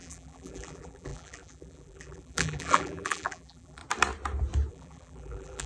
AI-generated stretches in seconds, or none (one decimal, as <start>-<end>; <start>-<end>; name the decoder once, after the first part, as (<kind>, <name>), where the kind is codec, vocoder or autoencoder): 0.0-3.8 (vocoder, BigVGAN v2); 4.7-5.7